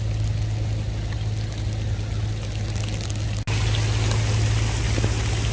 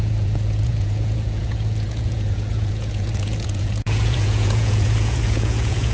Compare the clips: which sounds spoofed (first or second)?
second